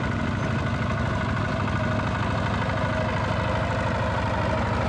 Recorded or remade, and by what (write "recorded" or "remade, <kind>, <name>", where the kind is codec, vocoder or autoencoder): recorded